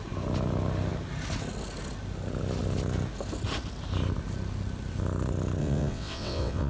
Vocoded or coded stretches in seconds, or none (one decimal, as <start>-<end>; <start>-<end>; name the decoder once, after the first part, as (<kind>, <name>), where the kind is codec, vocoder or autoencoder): 5.6-6.7 (vocoder, WaveNeXt)